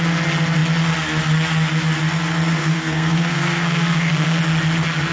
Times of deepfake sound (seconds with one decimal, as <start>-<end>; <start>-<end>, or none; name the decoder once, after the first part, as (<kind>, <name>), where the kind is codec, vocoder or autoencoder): 2.6-4.4 (codec, SNAC)